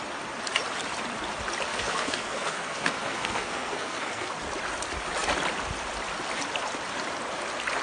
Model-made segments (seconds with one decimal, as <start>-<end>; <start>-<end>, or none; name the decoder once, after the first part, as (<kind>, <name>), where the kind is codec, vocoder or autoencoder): 1.7-4.3 (codec, SNAC)